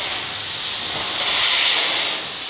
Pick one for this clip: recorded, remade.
recorded